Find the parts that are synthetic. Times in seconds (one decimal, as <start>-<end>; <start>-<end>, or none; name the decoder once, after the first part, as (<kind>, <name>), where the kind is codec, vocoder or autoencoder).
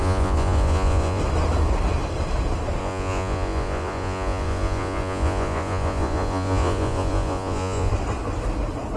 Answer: 0.0-1.2 (vocoder, Vocos); 2.8-7.9